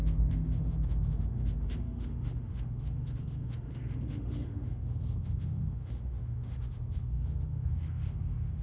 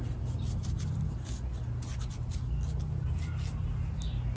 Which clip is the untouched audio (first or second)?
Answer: second